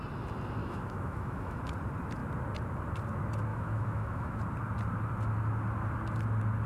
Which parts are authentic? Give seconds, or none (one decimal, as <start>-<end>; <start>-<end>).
0.0-0.6; 1.6-3.5; 4.4-6.7